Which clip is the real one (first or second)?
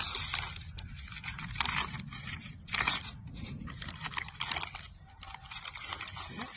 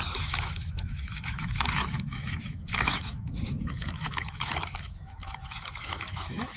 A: first